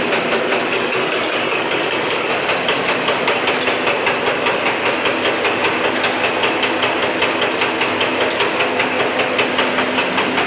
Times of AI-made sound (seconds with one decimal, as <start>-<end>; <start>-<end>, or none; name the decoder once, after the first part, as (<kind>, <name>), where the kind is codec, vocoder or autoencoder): 0.7-2.3 (codec, DAC)